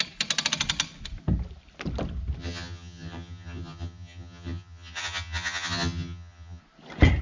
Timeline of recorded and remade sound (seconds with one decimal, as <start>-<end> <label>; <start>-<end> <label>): 0.0-2.4 recorded; 2.4-6.6 remade; 6.6-7.2 recorded